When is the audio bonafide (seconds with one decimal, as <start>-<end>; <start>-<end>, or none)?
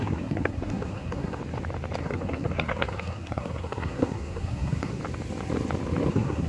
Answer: 1.4-2.0; 5.0-6.1